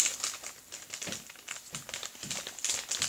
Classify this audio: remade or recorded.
recorded